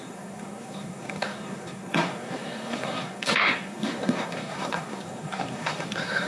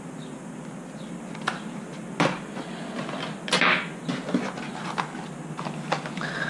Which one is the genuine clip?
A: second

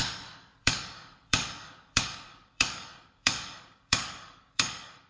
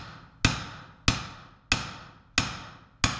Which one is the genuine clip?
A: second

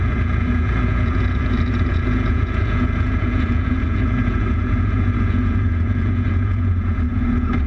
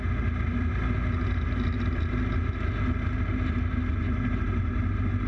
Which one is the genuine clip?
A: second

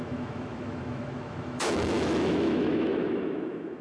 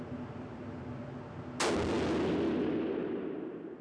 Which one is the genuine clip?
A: second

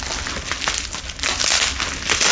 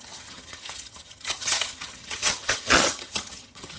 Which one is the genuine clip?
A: first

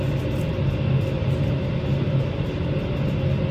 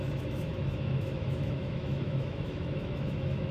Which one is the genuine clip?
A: first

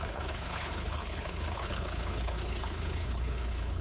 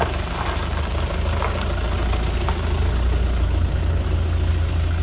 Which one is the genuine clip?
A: second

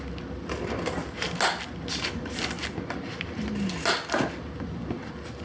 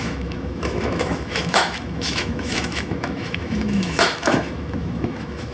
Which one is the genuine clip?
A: first